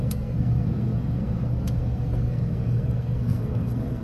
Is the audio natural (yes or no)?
no